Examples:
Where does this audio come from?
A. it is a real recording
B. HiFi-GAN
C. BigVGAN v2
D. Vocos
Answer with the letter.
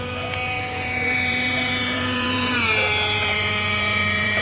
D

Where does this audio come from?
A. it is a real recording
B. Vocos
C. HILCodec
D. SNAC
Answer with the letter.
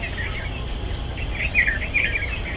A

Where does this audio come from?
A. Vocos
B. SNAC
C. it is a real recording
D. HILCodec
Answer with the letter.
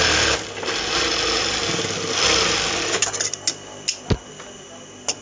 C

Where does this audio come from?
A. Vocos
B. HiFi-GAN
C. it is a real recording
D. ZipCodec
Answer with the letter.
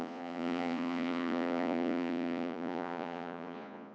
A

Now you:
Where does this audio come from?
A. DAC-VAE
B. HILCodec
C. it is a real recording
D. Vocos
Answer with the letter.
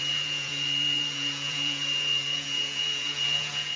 D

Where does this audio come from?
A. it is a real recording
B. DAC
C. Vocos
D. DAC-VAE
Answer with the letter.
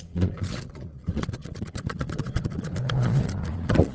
C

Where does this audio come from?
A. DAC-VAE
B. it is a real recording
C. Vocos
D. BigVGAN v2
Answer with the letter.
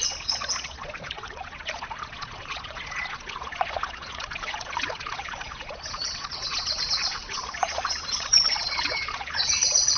C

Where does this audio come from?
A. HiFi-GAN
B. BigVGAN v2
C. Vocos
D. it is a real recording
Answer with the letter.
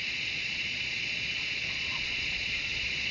C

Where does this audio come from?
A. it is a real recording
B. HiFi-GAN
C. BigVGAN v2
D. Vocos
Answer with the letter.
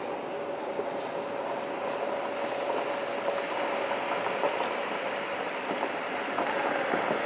A